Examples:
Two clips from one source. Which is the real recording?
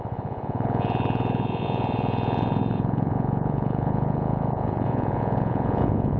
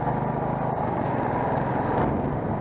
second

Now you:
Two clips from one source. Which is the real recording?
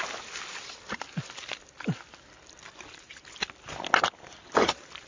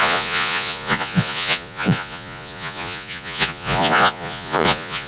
first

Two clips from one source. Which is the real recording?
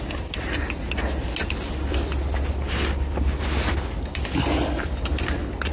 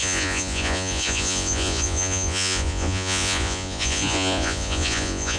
first